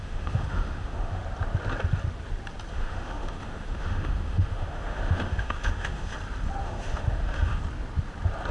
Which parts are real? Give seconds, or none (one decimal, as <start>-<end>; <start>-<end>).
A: 1.2-2.7; 6.1-6.6; 7.6-8.5

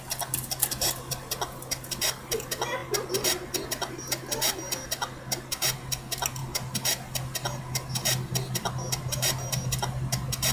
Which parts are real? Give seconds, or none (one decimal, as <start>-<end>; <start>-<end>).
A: 0.0-10.5

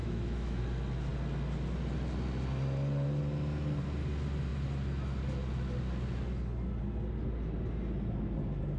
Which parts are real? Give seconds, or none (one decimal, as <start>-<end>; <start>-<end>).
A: 0.6-8.8

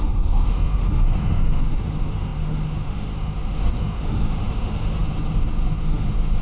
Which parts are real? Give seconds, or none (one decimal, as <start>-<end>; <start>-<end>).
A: none

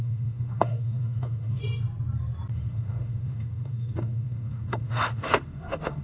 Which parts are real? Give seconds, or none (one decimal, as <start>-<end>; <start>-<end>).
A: 1.6-2.5

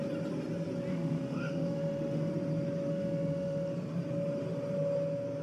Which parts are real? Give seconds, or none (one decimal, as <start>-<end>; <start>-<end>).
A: 0.0-0.9; 2.3-2.9; 3.7-5.4

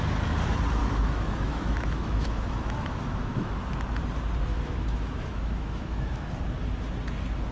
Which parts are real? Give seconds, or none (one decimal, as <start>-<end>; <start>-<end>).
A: 0.0-0.8; 3.7-4.5; 6.3-7.5

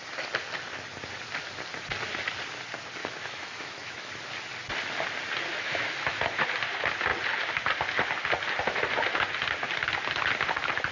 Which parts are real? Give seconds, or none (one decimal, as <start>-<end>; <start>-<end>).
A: 0.0-3.0; 4.1-5.5; 6.4-10.9